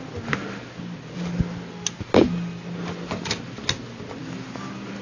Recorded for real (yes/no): yes